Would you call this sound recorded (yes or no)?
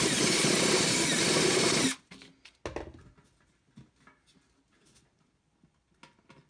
yes